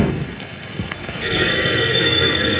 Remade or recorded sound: remade